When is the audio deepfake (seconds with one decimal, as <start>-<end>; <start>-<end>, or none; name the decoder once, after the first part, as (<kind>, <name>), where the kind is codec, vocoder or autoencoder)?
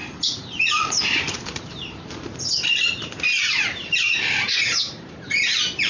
0.0-2.3 (vocoder, BigVGAN v2); 3.7-5.9